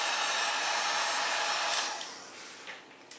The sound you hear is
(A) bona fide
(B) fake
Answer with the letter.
A